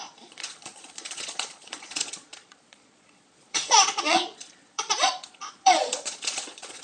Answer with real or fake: fake